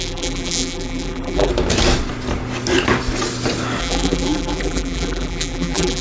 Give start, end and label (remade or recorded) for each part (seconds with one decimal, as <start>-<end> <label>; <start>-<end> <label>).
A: 0.0-1.5 remade; 1.5-3.8 recorded; 3.8-6.0 remade